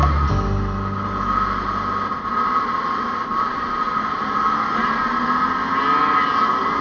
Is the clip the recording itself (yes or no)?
yes